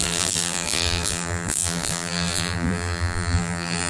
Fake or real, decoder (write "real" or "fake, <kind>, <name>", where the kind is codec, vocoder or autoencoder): fake, vocoder, BigVGAN v2